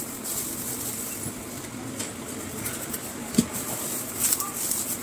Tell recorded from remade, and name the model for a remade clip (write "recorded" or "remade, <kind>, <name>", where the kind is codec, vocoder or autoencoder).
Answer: remade, vocoder, BigVGAN v2